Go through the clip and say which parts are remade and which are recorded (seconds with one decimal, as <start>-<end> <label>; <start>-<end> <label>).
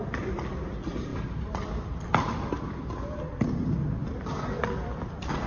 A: 0.0-1.1 recorded; 1.1-2.5 remade; 2.5-4.0 recorded; 4.0-5.5 remade